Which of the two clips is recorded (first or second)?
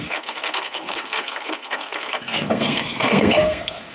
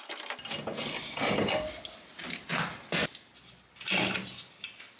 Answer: second